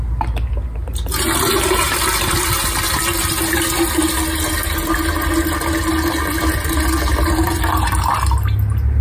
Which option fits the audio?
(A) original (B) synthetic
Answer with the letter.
A